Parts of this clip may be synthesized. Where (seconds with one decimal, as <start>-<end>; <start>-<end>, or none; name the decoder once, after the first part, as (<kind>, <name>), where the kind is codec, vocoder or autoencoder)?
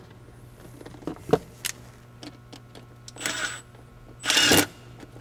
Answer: none